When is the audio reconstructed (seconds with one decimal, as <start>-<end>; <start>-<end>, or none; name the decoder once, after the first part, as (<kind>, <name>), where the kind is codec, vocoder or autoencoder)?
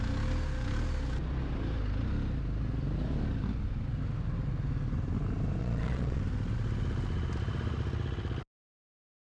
5.6-6.2 (vocoder, Vocos)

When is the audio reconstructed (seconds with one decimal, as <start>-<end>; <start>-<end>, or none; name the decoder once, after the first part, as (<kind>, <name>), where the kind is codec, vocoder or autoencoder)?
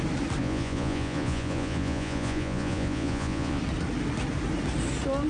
0.4-3.6 (vocoder, Vocos)